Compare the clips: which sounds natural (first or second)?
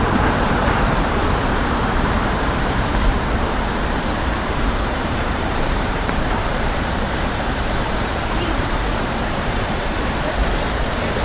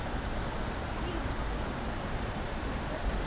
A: second